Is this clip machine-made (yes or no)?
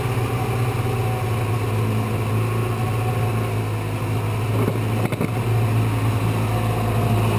no